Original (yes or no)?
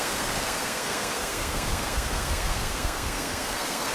no